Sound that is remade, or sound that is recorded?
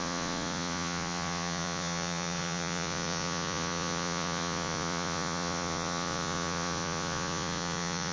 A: remade